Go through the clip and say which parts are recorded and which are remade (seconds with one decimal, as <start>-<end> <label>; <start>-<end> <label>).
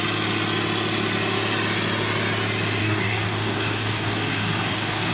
0.0-2.8 recorded; 2.8-5.1 remade